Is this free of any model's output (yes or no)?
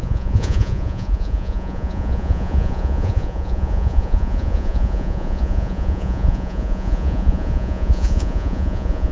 no